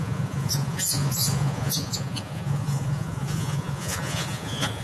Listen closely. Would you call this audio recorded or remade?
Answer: remade